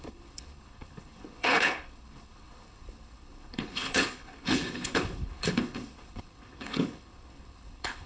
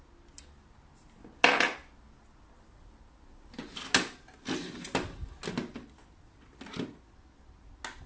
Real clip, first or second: second